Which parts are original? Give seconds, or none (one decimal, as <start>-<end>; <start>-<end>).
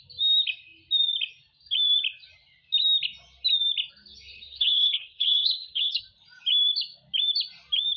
0.0-4.3; 6.0-8.0